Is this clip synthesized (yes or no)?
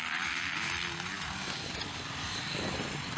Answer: no